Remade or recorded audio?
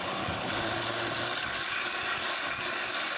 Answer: remade